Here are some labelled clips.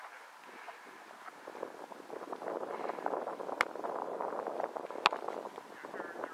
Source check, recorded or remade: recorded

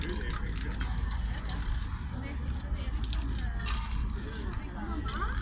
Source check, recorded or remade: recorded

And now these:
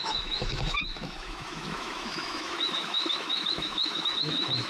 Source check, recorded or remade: remade